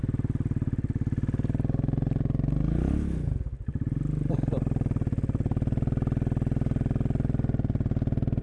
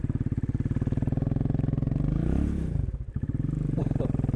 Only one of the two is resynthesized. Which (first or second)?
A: second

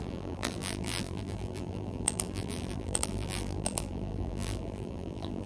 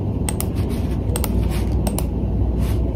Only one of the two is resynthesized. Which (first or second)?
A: first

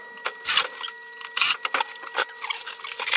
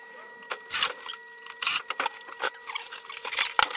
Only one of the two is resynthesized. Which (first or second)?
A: second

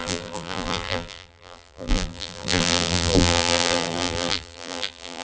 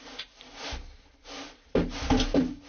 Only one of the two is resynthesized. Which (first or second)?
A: first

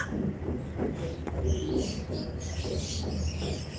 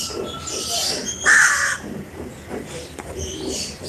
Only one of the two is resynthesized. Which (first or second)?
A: second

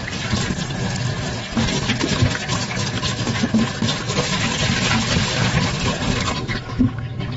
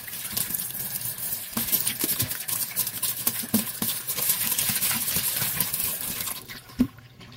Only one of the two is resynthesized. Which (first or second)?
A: second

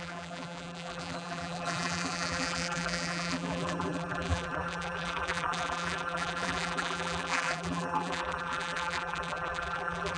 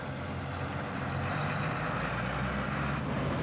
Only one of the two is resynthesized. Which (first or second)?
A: first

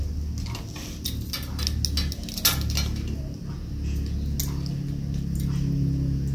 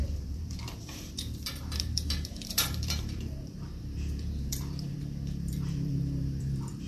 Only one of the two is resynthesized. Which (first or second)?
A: second